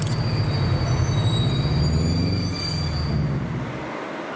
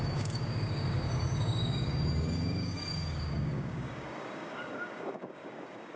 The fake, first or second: second